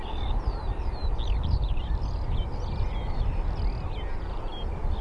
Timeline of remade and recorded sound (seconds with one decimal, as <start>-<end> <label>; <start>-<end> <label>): 0.0-5.0 recorded